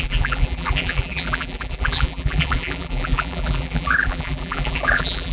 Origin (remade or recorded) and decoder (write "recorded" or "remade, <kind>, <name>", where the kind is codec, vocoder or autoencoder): remade, vocoder, BigVGAN v2